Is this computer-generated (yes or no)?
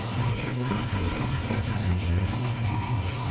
yes